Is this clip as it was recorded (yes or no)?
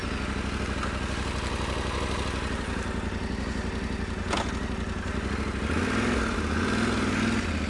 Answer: yes